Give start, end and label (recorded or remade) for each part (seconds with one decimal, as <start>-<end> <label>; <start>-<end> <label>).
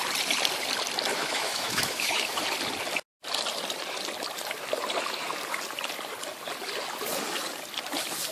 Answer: 0.0-1.1 recorded; 1.1-2.4 remade; 2.4-8.3 recorded